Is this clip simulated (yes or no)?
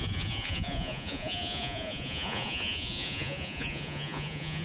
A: yes